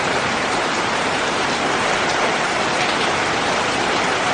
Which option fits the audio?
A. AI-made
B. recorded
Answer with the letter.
A